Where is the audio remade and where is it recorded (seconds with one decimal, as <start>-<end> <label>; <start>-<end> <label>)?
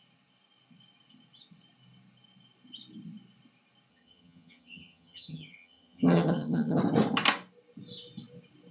0.0-3.9 recorded; 3.9-6.8 remade; 6.8-8.7 recorded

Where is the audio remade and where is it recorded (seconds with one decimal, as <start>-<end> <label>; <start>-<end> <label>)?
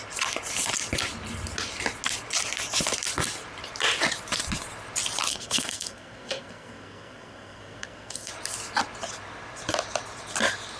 0.0-5.3 recorded; 5.3-8.3 remade; 8.3-10.8 recorded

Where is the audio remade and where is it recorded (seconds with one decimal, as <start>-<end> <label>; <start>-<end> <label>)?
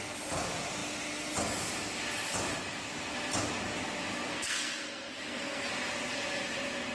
0.0-4.1 recorded; 4.1-5.7 remade; 5.7-6.9 recorded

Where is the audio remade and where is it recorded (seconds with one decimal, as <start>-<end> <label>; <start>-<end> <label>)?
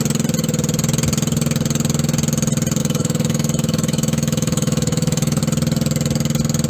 0.0-2.8 recorded; 2.8-5.4 remade; 5.4-6.7 recorded